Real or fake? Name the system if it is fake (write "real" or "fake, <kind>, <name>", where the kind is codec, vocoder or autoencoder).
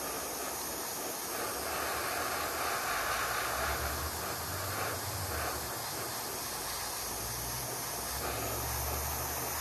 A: real